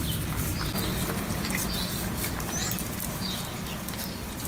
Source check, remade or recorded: recorded